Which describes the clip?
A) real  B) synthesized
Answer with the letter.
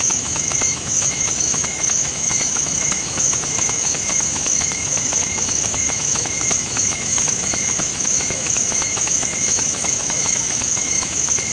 B